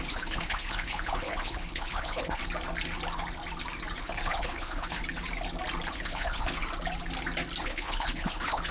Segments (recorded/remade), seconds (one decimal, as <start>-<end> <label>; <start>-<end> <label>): 0.0-2.4 remade; 2.4-4.0 recorded; 4.0-5.0 remade; 5.0-5.9 recorded; 5.9-6.6 remade; 6.6-7.6 recorded; 7.6-8.7 remade